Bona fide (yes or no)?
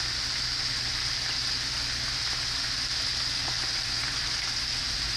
yes